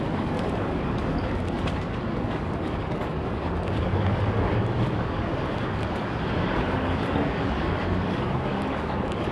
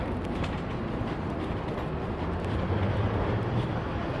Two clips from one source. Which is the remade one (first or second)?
first